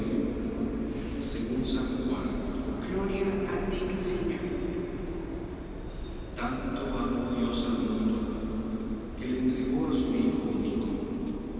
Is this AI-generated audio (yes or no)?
no